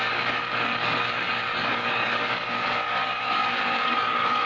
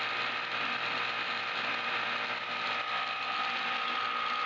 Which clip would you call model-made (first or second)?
first